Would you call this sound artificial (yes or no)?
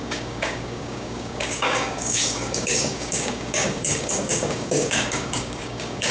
yes